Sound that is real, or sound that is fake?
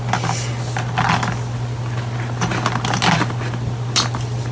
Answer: real